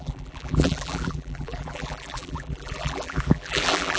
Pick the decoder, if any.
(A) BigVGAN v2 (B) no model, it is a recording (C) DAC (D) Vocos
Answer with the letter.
A